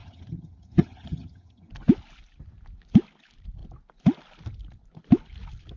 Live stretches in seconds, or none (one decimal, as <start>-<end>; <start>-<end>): 1.7-5.8